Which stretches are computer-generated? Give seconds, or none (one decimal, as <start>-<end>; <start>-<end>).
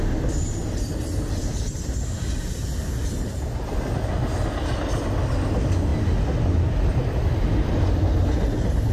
none